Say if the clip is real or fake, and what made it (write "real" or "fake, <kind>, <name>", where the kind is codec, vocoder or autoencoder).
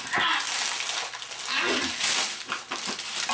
real